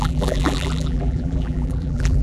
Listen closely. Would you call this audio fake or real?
fake